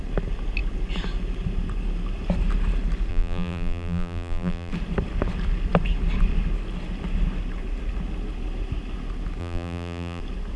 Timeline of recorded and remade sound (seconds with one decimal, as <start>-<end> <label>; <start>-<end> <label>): 0.0-3.1 recorded; 3.1-4.7 remade; 4.7-9.4 recorded; 9.4-10.2 remade; 10.2-10.6 recorded